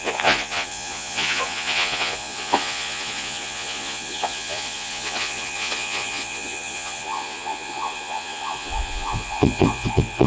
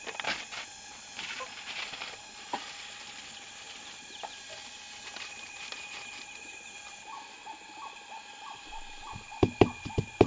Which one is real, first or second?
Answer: second